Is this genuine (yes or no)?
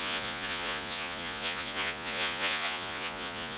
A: no